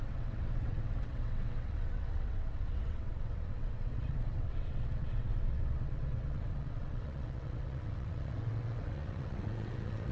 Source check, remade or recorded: remade